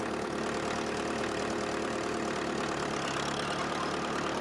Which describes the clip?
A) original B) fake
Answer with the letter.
A